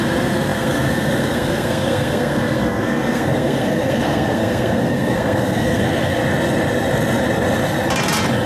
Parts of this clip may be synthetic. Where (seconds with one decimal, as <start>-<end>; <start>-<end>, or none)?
0.0-6.2